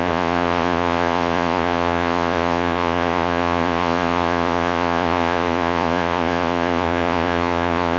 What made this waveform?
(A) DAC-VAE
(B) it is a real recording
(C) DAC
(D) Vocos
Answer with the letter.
D